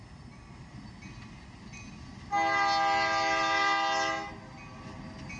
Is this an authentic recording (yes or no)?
yes